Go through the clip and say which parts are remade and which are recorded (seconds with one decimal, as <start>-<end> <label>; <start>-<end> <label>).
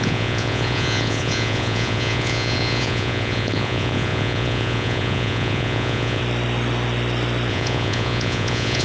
0.0-6.2 remade; 6.2-7.5 recorded; 7.5-8.8 remade